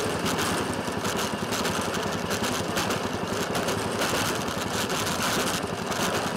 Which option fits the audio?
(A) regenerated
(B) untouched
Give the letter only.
B